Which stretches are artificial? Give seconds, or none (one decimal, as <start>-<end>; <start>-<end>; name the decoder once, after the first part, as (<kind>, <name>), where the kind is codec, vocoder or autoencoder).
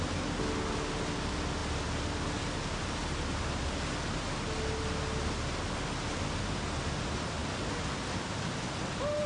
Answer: none